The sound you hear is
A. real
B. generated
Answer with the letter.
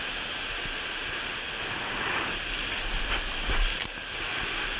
A